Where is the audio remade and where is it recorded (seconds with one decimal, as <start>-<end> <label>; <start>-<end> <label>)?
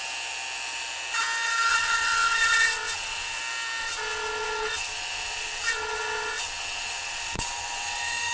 0.0-1.7 recorded; 1.7-3.4 remade; 3.4-3.8 recorded; 3.8-8.3 remade